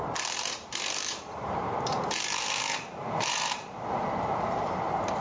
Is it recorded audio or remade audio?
remade